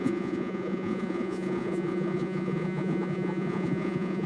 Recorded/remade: remade